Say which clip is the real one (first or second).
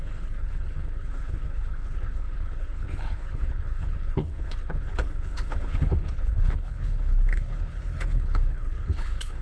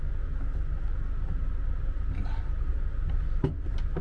second